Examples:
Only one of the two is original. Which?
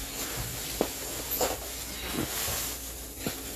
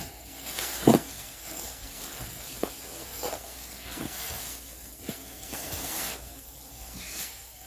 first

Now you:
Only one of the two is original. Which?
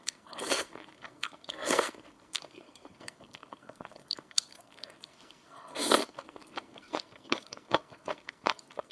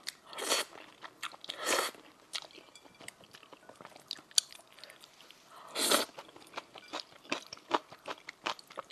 second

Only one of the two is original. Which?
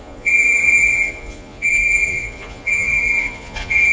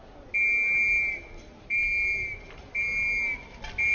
second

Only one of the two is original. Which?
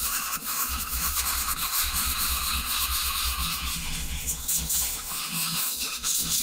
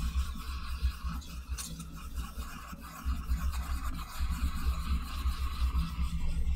second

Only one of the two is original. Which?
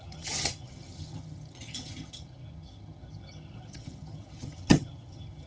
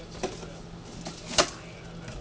second